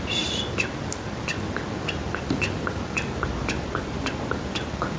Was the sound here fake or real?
real